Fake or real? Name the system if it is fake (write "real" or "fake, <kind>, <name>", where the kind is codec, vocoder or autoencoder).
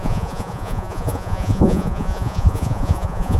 fake, vocoder, Vocos